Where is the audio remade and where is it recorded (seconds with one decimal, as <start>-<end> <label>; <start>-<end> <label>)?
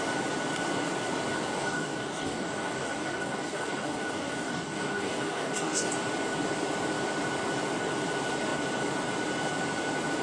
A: 0.0-1.3 recorded; 1.3-5.9 remade; 5.9-10.2 recorded